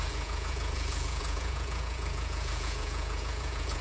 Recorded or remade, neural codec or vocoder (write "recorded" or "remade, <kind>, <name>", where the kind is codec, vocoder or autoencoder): remade, vocoder, Vocos